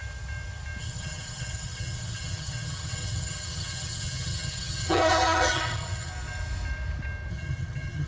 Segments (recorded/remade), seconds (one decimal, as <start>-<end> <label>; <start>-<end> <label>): 0.0-0.8 recorded; 0.8-6.1 remade; 6.1-7.3 recorded; 7.3-8.1 remade